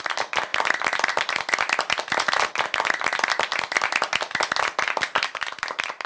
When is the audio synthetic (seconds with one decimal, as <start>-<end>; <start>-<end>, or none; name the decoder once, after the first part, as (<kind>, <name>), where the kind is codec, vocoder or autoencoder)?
0.0-3.5 (vocoder, BigVGAN v2); 5.5-6.1

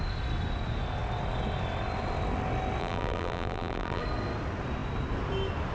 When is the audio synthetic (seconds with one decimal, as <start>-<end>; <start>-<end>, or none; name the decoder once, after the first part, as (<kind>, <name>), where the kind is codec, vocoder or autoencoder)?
2.8-4.0 (vocoder, BigVGAN v2)

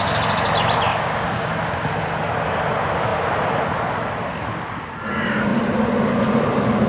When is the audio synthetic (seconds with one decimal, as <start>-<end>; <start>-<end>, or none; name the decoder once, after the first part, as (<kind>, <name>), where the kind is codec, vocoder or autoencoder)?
0.9-1.5 (codec, DAC)